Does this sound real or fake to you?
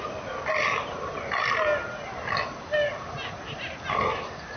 real